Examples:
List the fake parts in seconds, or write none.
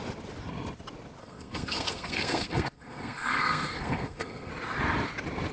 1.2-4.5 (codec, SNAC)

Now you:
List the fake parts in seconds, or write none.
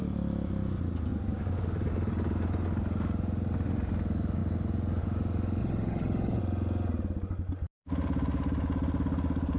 5.6-6.4 (vocoder, HiFi-GAN)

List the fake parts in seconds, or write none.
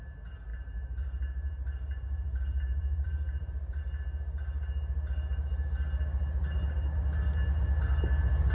0.5-3.8 (vocoder, BigVGAN v2)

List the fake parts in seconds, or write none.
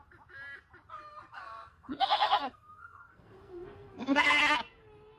1.3-4.4 (codec, SNAC)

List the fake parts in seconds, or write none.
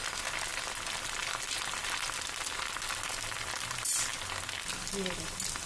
none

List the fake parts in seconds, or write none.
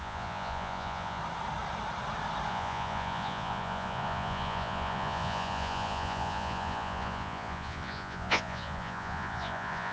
0.0-1.2 (vocoder, Vocos); 2.5-9.9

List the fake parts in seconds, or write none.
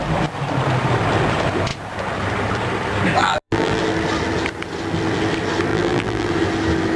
3.2-3.8 (vocoder, BigVGAN v2); 5.7-6.3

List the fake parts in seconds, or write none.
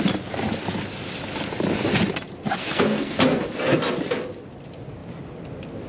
2.6-3.4 (codec, SNAC)